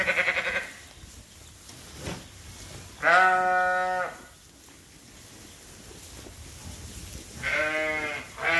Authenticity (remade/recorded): recorded